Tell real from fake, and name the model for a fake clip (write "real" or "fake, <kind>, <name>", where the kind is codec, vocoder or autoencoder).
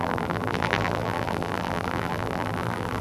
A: fake, vocoder, BigVGAN v2